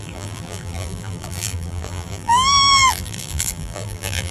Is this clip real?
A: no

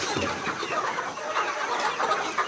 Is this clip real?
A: yes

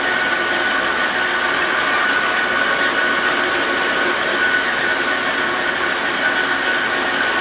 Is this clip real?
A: yes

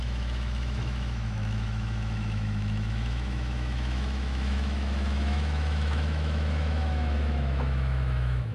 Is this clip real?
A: no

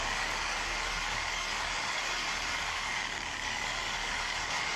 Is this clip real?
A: no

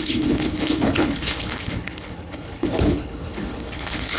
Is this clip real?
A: no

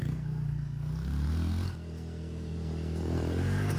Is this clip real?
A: no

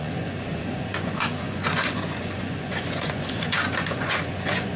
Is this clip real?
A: no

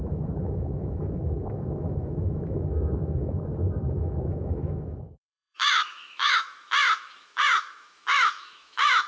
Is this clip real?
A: no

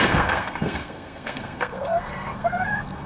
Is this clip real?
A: no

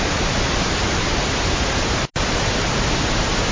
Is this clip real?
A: yes